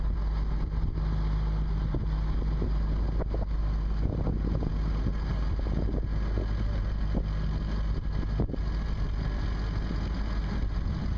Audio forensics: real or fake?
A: real